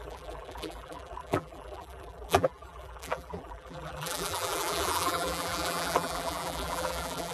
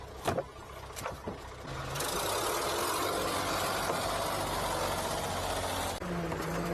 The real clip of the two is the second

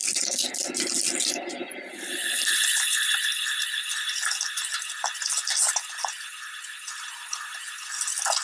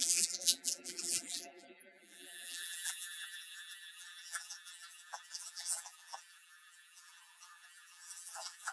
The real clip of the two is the first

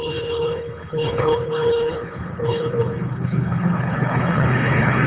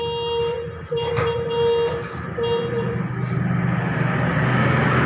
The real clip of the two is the second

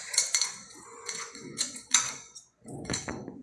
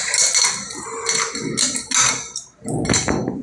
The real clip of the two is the second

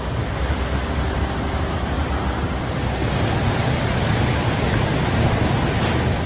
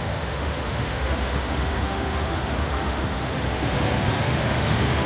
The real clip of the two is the first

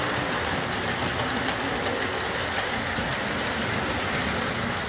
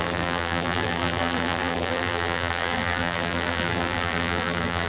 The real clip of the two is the first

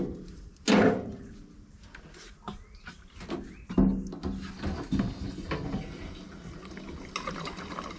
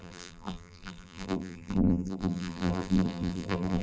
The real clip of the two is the first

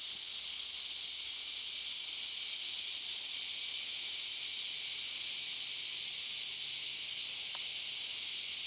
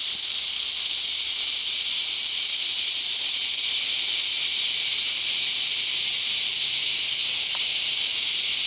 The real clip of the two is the first